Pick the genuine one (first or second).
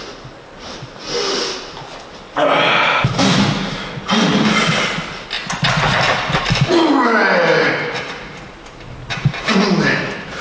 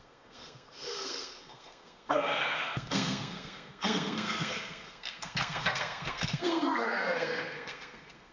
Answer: first